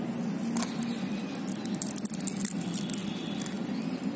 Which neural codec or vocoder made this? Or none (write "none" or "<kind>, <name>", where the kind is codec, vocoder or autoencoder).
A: none